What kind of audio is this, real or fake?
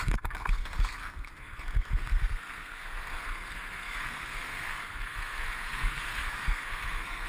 fake